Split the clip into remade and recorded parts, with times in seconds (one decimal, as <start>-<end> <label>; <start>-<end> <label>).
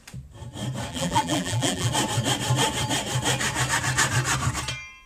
0.0-0.9 recorded; 0.9-1.9 remade; 1.9-5.1 recorded